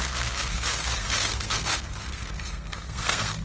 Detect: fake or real fake